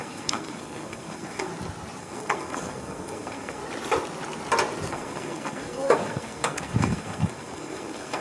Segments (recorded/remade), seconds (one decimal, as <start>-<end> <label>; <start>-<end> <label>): 0.0-1.5 remade; 1.5-2.0 recorded; 2.0-3.6 remade; 3.6-4.9 recorded; 4.9-8.2 remade